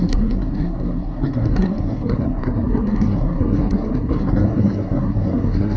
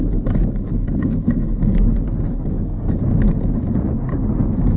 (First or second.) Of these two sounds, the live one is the second